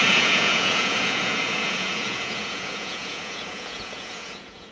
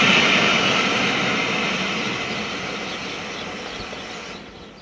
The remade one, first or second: first